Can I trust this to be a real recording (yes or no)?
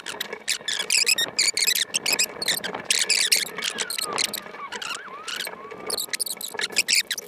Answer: yes